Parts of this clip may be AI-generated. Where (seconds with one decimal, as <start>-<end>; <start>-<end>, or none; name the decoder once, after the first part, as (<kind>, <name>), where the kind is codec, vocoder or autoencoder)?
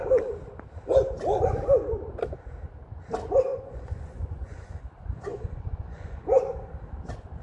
3.5-4.8 (vocoder, Vocos); 5.3-6.2